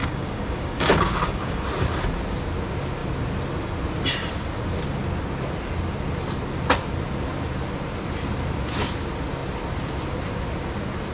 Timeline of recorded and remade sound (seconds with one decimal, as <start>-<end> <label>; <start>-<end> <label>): 0.0-1.6 remade; 1.6-11.1 recorded